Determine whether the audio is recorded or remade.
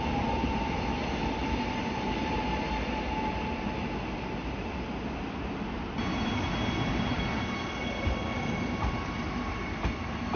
recorded